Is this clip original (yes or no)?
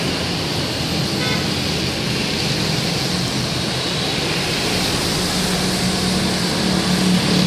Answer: yes